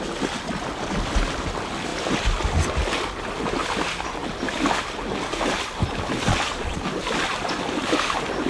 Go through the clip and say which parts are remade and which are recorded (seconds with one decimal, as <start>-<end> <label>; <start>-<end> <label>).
0.0-6.3 recorded; 6.3-6.8 remade; 6.8-8.5 recorded